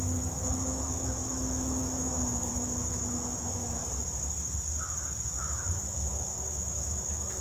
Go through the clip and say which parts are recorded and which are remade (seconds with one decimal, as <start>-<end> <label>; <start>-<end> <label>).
0.0-3.8 remade; 3.8-5.3 recorded; 5.3-7.4 remade